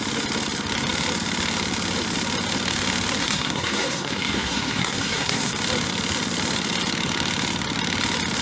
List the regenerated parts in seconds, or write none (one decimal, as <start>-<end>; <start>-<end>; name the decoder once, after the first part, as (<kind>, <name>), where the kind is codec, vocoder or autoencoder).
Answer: 3.2-5.5 (codec, SNAC)